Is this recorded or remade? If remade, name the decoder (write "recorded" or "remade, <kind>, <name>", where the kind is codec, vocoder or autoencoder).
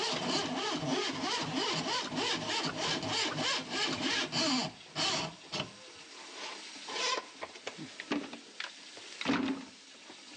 recorded